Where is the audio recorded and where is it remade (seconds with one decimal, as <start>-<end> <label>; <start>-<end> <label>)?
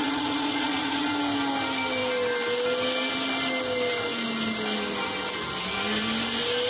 0.0-1.1 remade; 1.1-6.7 recorded